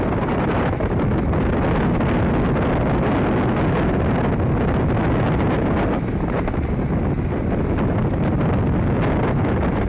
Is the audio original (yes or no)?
yes